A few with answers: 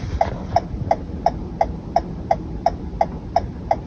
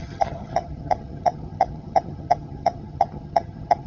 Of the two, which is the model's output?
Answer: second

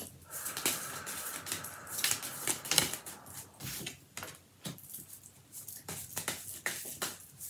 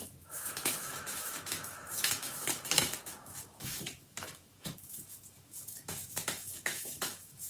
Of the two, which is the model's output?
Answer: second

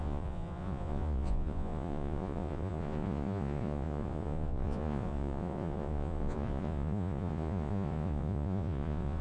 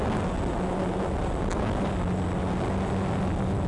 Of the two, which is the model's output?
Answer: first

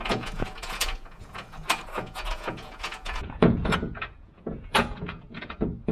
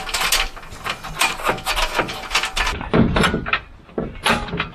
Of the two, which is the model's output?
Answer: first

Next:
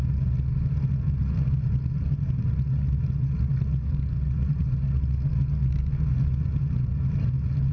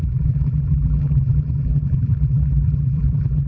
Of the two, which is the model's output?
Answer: second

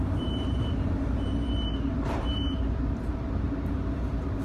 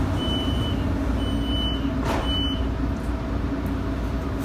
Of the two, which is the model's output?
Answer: first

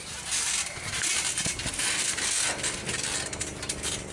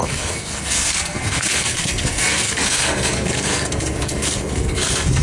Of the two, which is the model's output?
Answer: second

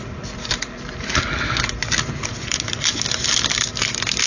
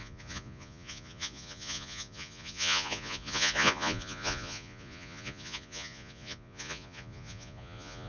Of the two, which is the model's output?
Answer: second